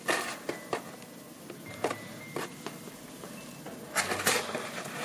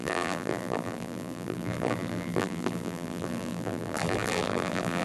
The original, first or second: first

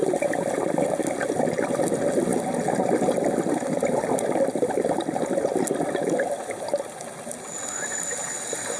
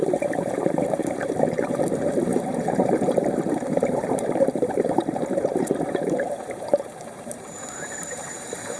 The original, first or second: first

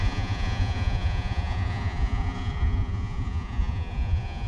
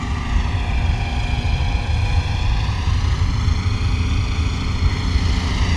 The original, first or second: second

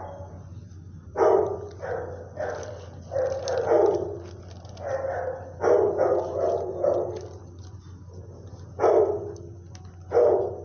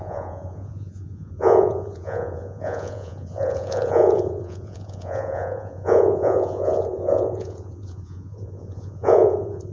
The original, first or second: first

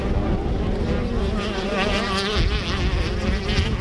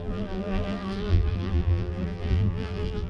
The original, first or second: first